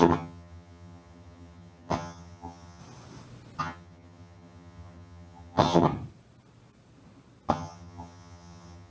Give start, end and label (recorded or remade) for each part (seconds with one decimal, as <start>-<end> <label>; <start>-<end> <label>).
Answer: 0.0-2.8 remade; 2.8-3.6 recorded; 3.6-5.9 remade; 5.9-7.5 recorded; 7.5-8.9 remade